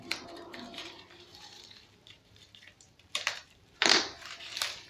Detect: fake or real fake